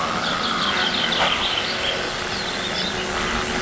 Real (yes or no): yes